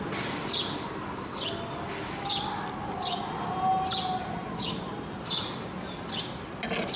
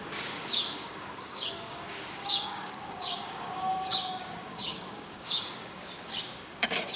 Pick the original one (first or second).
first